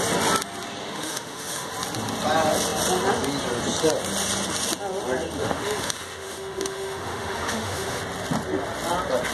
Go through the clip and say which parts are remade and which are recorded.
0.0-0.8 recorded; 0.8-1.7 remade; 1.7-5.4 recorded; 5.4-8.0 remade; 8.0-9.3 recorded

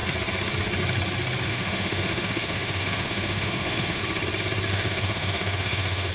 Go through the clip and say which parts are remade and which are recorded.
0.0-1.5 recorded; 1.5-4.0 remade; 4.0-4.7 recorded; 4.7-6.1 remade

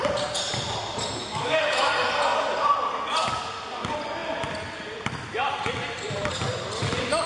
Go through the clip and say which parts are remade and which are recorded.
0.0-1.2 recorded; 1.2-1.9 remade; 1.9-7.3 recorded

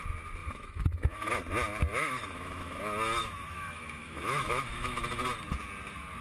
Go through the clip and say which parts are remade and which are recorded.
0.0-0.4 recorded; 0.4-1.4 remade; 1.4-1.9 recorded; 1.9-2.8 remade; 2.8-3.2 recorded; 3.2-5.0 remade; 5.0-6.2 recorded

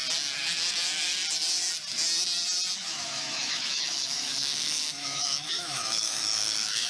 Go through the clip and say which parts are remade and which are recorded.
0.0-2.7 recorded; 2.7-6.9 remade

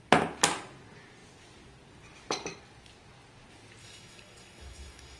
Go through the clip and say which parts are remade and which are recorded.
0.0-3.8 recorded; 3.8-5.2 remade

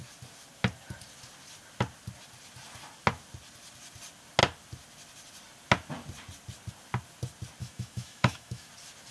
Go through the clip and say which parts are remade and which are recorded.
0.0-7.6 recorded; 7.6-8.7 remade; 8.7-9.1 recorded